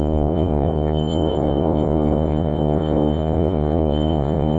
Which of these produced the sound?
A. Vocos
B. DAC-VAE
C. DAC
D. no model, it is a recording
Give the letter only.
A